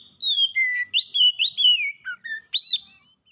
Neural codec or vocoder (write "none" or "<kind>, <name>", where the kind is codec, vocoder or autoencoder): none